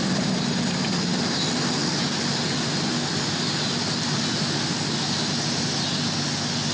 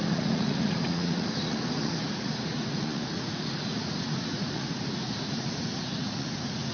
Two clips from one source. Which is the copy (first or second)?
second